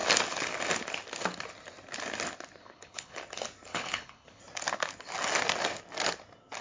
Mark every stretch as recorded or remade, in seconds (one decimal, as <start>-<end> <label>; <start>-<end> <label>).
0.0-2.6 recorded; 2.6-3.2 remade; 3.2-3.7 recorded; 3.7-4.4 remade; 4.4-6.6 recorded